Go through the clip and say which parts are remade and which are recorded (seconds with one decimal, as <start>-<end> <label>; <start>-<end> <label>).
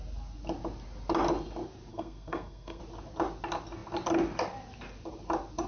0.0-1.9 recorded; 1.9-2.8 remade; 2.8-5.7 recorded